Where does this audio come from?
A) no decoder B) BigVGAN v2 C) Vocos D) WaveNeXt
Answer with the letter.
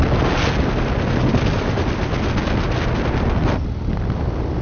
A